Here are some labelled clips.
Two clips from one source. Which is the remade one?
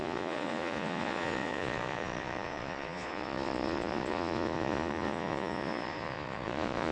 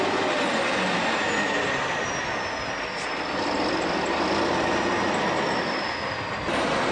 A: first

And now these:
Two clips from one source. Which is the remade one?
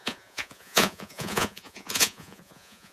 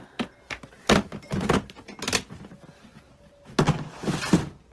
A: first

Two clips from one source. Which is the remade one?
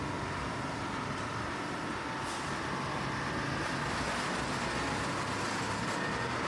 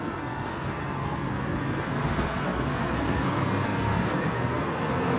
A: second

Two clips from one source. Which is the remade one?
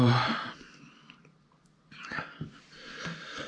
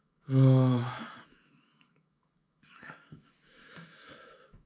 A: second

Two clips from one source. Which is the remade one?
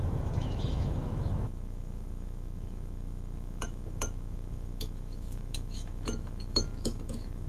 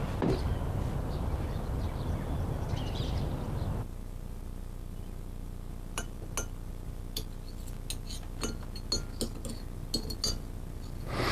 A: first